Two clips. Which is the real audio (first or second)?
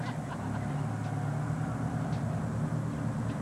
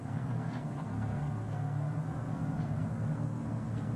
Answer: first